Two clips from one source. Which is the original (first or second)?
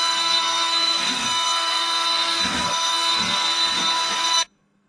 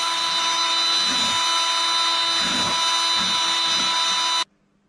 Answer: second